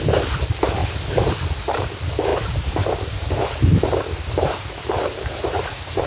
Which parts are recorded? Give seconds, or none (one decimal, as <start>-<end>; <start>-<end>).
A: 0.0-0.8; 1.9-2.3